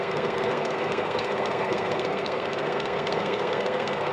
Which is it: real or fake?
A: fake